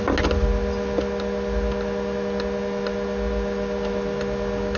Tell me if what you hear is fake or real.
real